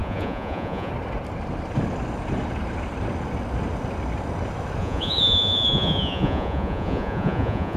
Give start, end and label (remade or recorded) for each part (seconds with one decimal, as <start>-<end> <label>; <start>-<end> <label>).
0.0-0.9 remade; 0.9-4.8 recorded; 4.8-7.8 remade